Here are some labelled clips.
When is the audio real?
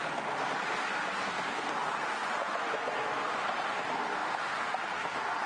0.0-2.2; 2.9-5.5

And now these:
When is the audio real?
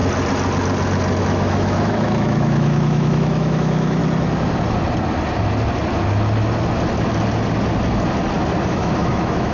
0.0-1.2; 4.0-8.7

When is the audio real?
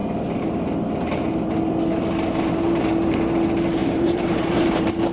0.0-3.8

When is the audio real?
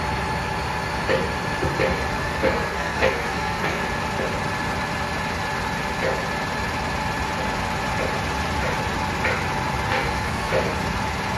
0.0-2.2; 3.8-9.9; 10.5-11.4